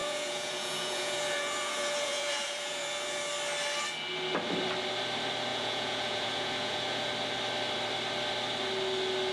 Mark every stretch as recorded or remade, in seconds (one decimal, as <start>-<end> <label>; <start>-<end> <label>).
0.0-3.2 remade; 3.2-5.5 recorded; 5.5-7.1 remade; 7.1-9.3 recorded